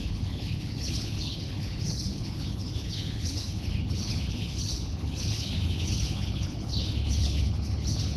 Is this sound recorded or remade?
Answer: remade